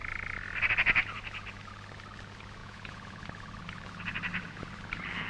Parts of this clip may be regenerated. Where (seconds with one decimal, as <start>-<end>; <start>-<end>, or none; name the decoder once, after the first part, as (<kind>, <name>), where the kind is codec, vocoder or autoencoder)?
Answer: 2.6-3.2 (vocoder, Vocos)